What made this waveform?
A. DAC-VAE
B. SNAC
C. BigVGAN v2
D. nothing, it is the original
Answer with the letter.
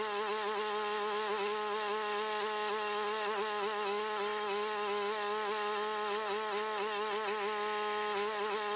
D